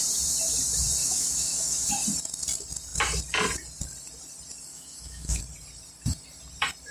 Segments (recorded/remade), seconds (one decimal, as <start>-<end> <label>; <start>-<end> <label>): 0.0-1.0 recorded; 1.0-1.9 remade; 1.9-4.7 recorded; 4.7-5.4 remade; 5.4-6.9 recorded